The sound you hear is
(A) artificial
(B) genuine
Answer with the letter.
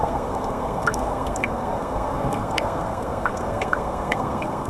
A